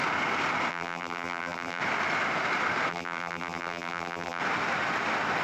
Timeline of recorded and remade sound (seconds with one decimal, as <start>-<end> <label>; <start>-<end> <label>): 0.0-0.7 recorded; 0.7-1.8 remade; 1.8-2.9 recorded; 2.9-4.4 remade; 4.4-5.4 recorded

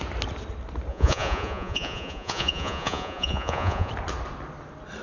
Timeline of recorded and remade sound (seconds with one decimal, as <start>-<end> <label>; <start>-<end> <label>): 0.0-0.9 recorded; 0.9-3.9 remade; 3.9-5.0 recorded

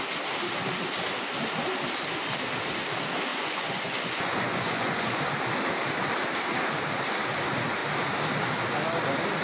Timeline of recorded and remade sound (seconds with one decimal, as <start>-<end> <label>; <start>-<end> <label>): 0.0-3.3 recorded; 3.3-5.2 remade; 5.2-9.4 recorded

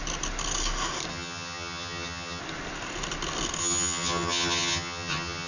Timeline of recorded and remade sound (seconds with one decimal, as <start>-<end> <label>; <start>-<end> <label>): 0.0-1.1 recorded; 1.1-2.4 remade; 2.4-3.6 recorded; 3.6-5.5 remade

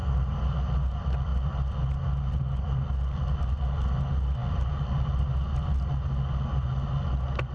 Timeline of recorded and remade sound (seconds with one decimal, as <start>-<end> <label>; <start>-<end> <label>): 0.0-7.5 recorded